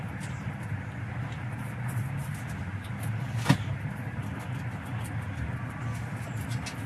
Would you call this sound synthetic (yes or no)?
no